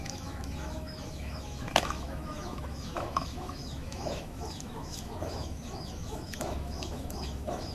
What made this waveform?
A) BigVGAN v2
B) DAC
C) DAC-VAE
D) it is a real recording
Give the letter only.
C